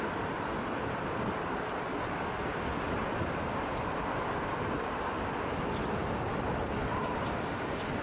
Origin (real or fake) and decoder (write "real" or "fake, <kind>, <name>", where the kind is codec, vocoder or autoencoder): real